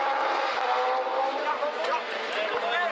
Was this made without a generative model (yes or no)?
yes